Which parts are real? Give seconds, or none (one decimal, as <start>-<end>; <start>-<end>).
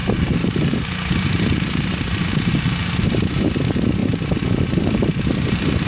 3.5-4.0